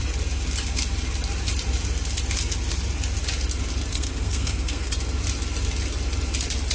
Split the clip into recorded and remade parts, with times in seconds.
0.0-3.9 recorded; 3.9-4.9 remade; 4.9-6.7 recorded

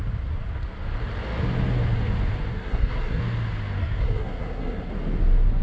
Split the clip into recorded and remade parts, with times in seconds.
0.0-2.5 recorded; 2.5-3.2 remade; 3.2-3.8 recorded; 3.8-4.9 remade; 4.9-5.6 recorded

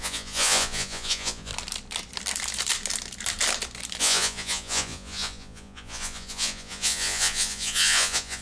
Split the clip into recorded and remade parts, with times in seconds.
0.0-1.5 remade; 1.5-4.0 recorded; 4.0-8.4 remade